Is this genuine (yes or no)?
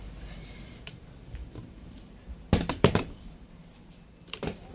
no